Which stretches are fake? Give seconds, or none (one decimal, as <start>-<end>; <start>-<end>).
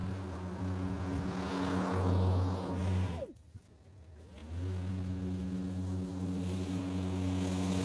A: 0.0-0.6; 2.8-3.6; 6.1-6.8